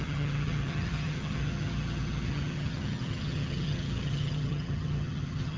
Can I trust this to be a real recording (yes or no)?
no